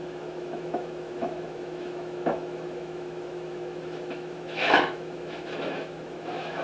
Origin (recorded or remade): remade